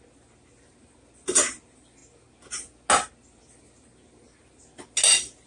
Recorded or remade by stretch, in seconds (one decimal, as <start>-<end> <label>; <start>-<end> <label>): 0.0-5.5 recorded